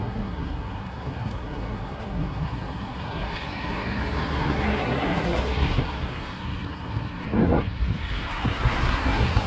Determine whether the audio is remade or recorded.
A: remade